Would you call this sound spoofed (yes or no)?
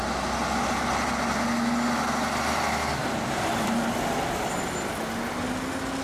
no